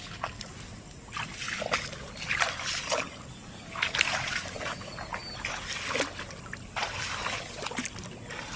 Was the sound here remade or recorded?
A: recorded